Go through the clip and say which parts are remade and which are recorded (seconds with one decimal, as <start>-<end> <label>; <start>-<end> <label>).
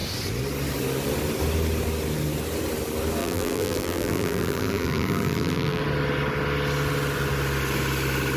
0.0-3.2 recorded; 3.2-5.8 remade; 5.8-8.4 recorded